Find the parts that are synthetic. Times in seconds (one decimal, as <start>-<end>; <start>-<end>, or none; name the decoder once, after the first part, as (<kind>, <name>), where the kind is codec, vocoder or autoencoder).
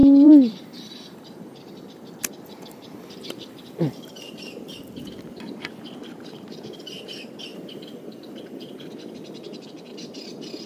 0.0-5.0 (vocoder, BigVGAN v2); 7.5-8.9